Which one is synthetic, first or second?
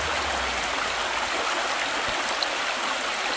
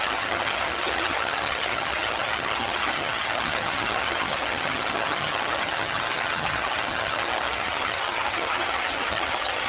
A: second